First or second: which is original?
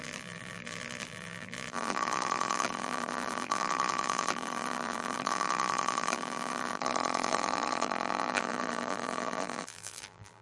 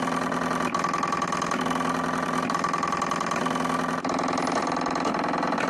second